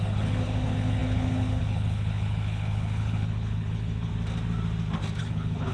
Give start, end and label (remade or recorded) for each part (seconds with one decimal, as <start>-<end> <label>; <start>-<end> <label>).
0.0-4.1 remade; 4.1-5.2 recorded; 5.2-5.7 remade